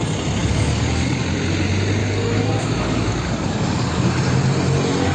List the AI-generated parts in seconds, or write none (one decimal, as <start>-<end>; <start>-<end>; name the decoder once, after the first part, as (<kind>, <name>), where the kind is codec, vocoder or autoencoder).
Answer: 0.4-1.2 (codec, DAC); 2.0-4.1